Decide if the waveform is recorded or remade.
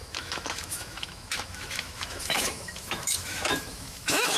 remade